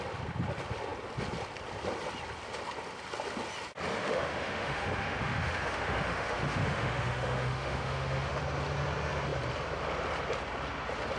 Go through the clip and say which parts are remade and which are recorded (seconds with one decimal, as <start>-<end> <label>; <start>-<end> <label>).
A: 0.0-3.9 recorded; 3.9-8.4 remade; 8.4-11.2 recorded